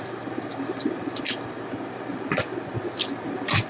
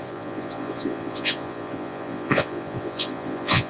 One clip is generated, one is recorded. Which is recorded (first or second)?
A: first